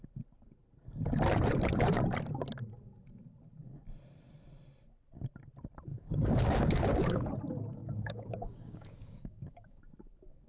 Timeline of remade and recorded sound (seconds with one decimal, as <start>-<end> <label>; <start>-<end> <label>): 0.0-5.9 recorded; 5.9-7.3 remade; 7.3-7.8 recorded; 7.8-9.8 remade; 9.8-10.5 recorded